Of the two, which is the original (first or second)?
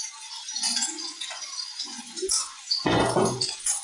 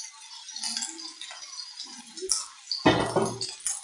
second